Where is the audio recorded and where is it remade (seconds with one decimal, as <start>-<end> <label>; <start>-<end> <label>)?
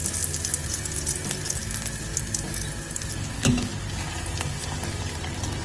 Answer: 0.0-3.3 recorded; 3.3-3.7 remade; 3.7-5.6 recorded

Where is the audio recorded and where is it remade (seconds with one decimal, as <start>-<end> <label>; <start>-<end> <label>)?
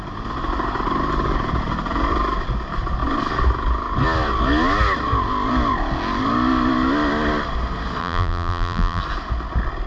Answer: 0.0-8.0 recorded; 8.0-9.0 remade; 9.0-9.9 recorded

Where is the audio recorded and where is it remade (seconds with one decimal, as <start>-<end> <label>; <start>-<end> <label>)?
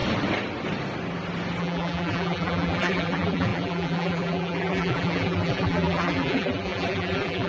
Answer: 0.0-1.6 recorded; 1.6-7.5 remade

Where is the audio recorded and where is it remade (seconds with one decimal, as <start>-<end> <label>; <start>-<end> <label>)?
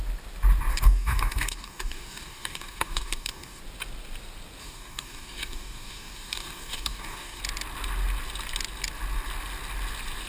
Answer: 0.0-0.7 recorded; 0.7-3.6 remade; 3.6-4.6 recorded; 4.6-7.4 remade; 7.4-10.3 recorded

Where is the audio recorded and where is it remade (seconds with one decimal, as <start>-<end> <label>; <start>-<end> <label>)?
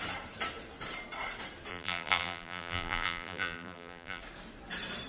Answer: 0.0-1.7 recorded; 1.7-4.2 remade; 4.2-5.1 recorded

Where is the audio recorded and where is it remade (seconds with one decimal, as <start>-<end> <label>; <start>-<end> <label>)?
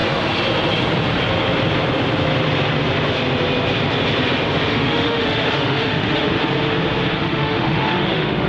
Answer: 0.0-4.7 recorded; 4.7-6.4 remade; 6.4-7.2 recorded; 7.2-8.5 remade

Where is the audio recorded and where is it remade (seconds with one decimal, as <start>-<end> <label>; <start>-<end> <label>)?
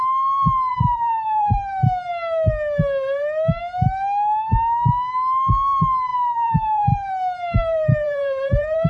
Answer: 0.0-0.7 recorded; 0.7-1.7 remade; 1.7-6.1 recorded; 6.1-7.1 remade; 7.1-7.6 recorded; 7.6-8.9 remade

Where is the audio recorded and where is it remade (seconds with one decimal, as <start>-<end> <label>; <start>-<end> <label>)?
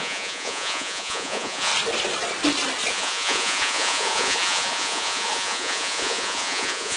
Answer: 0.0-1.7 remade; 1.7-2.9 recorded; 2.9-7.0 remade